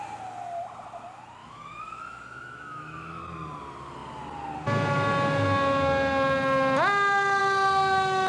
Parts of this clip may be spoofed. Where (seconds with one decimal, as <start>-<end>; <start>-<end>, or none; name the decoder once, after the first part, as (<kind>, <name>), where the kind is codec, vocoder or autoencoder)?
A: 1.4-3.2 (autoencoder, DAC-VAE)